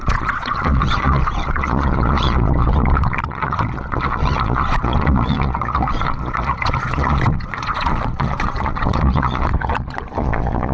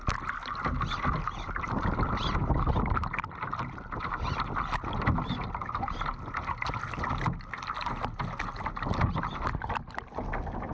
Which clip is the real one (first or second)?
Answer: second